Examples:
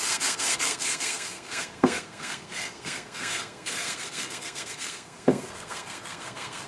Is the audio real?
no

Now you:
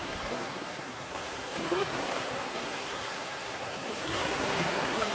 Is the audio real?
no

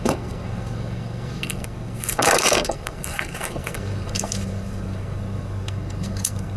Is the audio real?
no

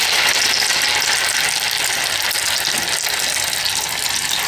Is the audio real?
yes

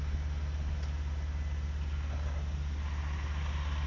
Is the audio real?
yes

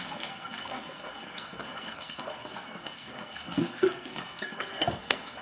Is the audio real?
no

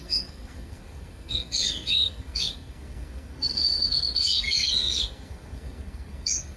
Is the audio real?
no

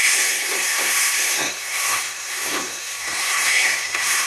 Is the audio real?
no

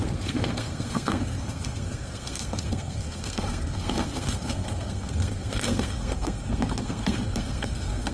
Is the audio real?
no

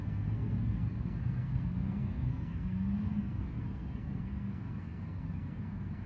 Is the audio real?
no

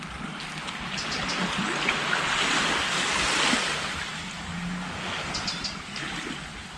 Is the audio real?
yes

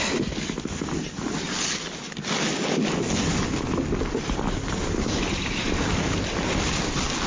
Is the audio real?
yes